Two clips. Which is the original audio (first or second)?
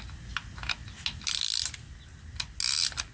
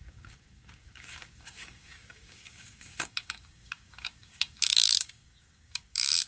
first